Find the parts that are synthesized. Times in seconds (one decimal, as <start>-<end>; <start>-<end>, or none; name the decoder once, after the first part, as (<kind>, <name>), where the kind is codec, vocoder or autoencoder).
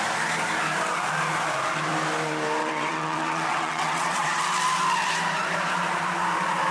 2.6-4.4 (vocoder, WaveNeXt)